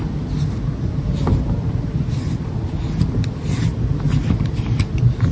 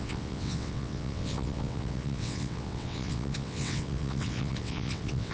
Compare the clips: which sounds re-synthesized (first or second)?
second